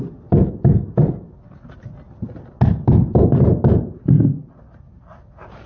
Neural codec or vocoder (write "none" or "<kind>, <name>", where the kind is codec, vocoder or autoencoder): none